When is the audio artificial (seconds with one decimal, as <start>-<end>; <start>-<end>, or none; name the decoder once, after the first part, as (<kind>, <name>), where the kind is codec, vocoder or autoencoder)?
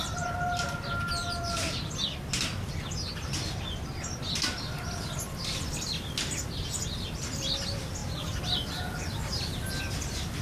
none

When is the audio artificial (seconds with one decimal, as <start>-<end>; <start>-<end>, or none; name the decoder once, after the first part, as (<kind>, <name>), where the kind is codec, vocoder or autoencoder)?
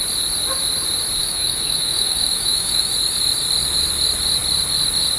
1.2-2.9 (autoencoder, DAC-VAE)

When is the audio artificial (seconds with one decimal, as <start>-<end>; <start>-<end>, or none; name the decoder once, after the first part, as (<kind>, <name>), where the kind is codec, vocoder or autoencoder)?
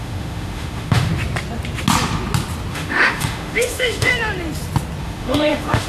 0.0-1.1 (autoencoder, DAC-VAE); 2.7-4.1; 5.0-5.9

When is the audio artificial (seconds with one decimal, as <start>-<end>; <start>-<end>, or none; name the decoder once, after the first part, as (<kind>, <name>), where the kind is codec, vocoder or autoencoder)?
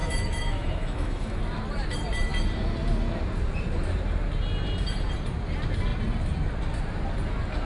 0.0-1.4 (autoencoder, DAC-VAE)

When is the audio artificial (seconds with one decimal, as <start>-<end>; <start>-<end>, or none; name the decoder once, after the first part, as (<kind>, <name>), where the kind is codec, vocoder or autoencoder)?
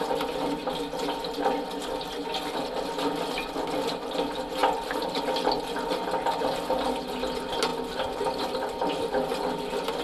none